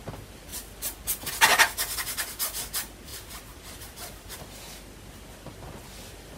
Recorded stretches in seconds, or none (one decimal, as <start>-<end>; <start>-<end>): 0.0-3.1; 4.4-6.4